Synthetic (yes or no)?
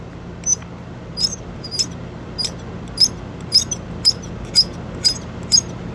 no